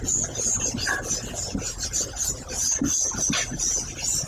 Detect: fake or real real